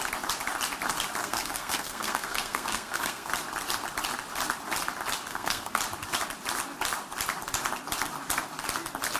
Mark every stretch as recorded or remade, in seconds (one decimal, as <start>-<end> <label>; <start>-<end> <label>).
0.0-1.2 recorded; 1.2-3.3 remade; 3.3-5.3 recorded; 5.3-5.8 remade; 5.8-9.2 recorded